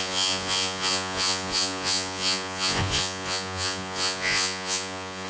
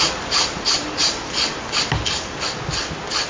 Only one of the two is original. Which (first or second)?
second